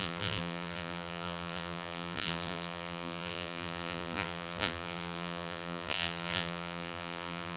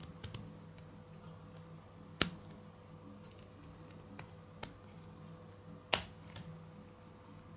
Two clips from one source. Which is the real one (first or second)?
second